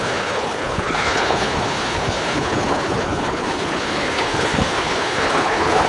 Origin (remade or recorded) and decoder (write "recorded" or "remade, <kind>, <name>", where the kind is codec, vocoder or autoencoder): remade, codec, HILCodec